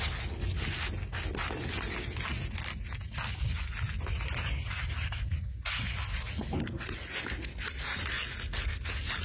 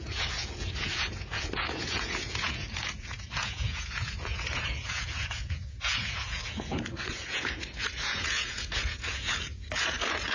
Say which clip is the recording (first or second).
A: first